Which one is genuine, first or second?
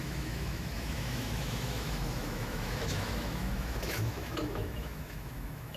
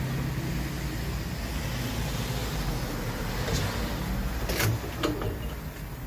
second